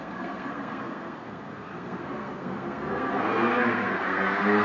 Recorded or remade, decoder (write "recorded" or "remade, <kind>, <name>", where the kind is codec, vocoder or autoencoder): remade, codec, SNAC